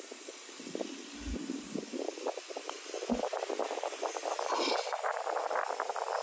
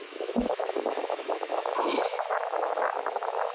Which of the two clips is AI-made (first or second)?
second